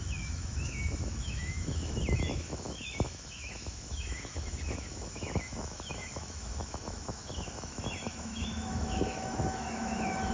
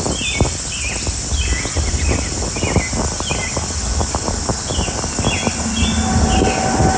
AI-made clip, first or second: first